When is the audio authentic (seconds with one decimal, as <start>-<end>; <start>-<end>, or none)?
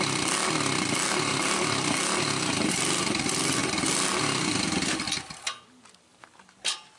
0.0-6.1